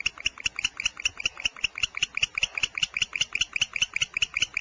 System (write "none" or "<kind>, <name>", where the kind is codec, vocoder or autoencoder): none